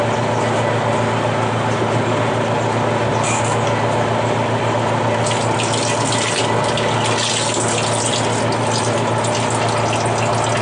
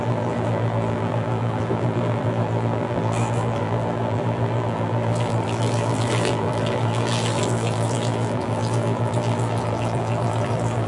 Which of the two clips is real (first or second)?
first